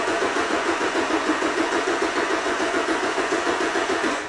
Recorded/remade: remade